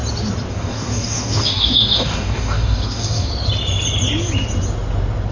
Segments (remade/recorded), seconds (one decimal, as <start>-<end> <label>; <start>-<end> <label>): 0.0-0.5 recorded; 0.5-3.3 remade; 3.3-5.3 recorded